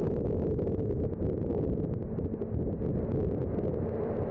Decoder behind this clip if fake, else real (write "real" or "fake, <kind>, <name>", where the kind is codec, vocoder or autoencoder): real